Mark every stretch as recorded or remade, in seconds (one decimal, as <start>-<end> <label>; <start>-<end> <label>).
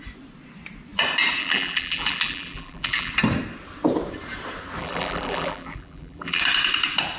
0.0-1.4 recorded; 1.4-3.1 remade; 3.1-4.8 recorded; 4.8-6.4 remade; 6.4-7.2 recorded